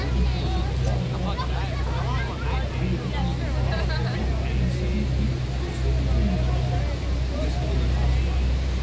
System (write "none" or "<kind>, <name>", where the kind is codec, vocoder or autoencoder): none